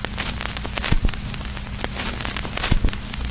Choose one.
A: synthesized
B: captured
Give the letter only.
B